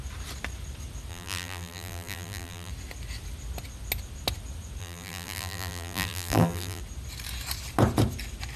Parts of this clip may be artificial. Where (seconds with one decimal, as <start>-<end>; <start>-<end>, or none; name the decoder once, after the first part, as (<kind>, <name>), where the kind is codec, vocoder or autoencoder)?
1.1-2.7 (vocoder, BigVGAN v2); 4.8-6.8